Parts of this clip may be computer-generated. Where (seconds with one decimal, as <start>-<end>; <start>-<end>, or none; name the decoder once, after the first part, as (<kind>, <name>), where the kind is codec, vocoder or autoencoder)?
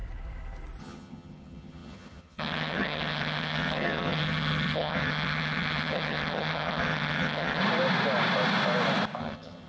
0.8-7.6 (vocoder, HiFi-GAN); 9.2-9.7